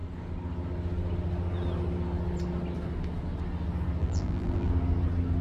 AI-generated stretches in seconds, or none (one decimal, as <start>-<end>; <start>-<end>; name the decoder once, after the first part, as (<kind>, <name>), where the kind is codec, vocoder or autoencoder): 4.0-4.7 (vocoder, BigVGAN v2)

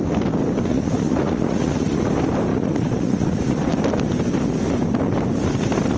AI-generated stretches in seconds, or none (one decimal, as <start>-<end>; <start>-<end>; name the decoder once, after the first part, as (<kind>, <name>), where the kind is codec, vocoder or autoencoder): 0.7-2.1 (vocoder, Vocos); 2.5-3.6

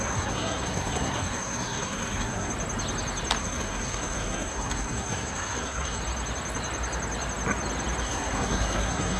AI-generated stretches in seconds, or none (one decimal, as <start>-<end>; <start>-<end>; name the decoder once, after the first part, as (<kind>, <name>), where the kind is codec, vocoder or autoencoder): 0.0-2.5 (codec, SNAC); 3.4-6.0; 8.0-9.2

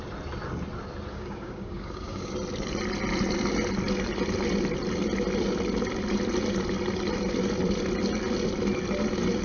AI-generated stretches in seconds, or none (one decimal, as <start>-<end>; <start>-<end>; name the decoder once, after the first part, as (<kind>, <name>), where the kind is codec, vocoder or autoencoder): 1.1-2.3 (codec, DAC)

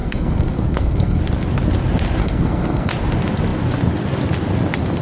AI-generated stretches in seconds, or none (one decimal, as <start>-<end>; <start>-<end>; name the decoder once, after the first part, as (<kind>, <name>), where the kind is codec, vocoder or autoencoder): 0.0-1.2 (codec, SNAC); 2.2-2.9

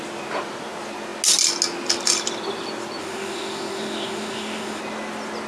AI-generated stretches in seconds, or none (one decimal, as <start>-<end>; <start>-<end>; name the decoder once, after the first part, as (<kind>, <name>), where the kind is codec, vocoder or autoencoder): 3.0-4.8 (autoencoder, DAC-VAE)